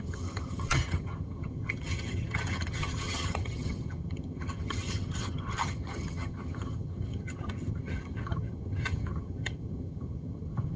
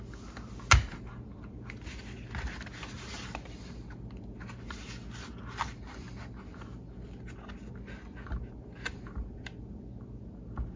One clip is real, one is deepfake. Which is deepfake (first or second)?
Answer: first